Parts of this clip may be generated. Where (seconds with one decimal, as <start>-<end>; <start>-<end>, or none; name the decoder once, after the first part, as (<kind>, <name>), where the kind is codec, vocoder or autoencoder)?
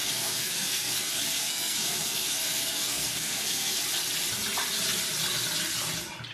0.0-3.8 (codec, SNAC)